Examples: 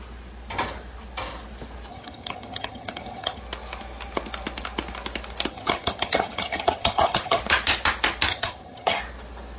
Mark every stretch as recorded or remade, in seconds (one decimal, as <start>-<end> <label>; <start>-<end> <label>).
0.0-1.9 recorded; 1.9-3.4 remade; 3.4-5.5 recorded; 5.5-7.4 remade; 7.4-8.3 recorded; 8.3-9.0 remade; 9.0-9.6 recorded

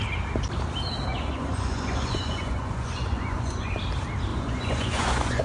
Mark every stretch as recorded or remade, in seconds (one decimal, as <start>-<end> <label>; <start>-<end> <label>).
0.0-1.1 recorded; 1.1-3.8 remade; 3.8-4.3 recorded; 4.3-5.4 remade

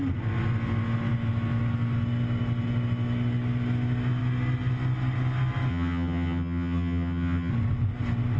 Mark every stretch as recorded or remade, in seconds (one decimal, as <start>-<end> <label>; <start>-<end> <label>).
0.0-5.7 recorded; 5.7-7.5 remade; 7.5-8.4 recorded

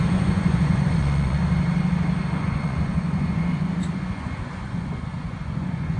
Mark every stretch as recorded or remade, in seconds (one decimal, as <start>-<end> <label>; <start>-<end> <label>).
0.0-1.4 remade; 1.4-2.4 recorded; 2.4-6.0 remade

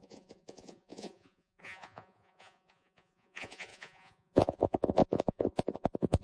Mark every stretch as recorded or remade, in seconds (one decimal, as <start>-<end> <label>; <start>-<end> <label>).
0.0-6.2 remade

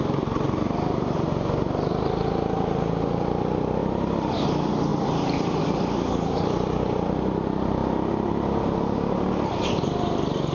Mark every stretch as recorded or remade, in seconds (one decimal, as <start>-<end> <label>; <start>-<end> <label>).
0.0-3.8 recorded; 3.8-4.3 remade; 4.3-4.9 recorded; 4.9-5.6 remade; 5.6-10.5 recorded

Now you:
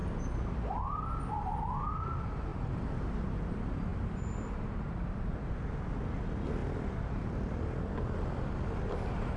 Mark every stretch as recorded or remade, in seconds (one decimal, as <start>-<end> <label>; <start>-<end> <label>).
0.0-1.2 remade; 1.2-2.5 recorded; 2.5-3.0 remade; 3.0-6.6 recorded; 6.6-7.6 remade; 7.6-9.4 recorded